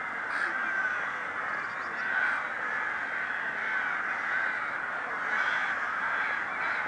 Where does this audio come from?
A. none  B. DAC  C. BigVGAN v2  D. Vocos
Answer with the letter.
A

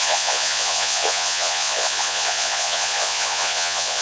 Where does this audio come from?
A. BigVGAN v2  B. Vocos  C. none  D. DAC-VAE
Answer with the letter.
B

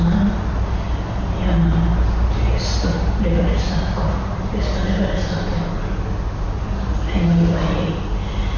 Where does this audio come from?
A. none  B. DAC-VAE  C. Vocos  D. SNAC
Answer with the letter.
A